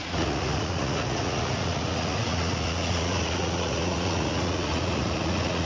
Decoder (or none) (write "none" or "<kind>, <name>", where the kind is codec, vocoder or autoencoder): vocoder, Vocos